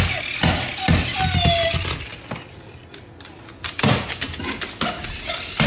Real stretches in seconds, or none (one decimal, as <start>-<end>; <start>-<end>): 0.0-5.7